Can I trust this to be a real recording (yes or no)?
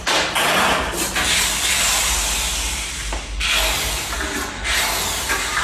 yes